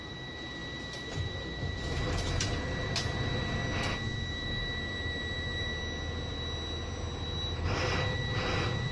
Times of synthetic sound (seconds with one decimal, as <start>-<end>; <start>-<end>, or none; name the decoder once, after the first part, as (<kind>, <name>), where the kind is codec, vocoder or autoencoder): 0.0-3.6 (vocoder, BigVGAN v2); 4.3-5.7; 7.6-8.9